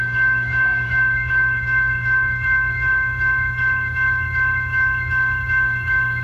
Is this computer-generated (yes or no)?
yes